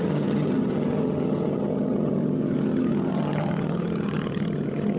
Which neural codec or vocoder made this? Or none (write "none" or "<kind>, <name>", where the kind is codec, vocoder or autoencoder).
vocoder, HiFi-GAN